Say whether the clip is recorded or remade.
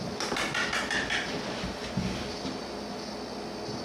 recorded